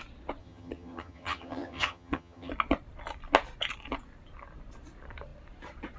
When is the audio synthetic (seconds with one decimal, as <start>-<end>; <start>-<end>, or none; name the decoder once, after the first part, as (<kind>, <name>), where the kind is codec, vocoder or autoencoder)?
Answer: 0.4-2.5 (vocoder, HiFi-GAN)